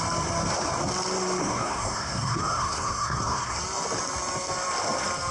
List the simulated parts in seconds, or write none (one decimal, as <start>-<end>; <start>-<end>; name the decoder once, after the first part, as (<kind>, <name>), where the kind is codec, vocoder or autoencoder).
1.4-3.6 (codec, SNAC)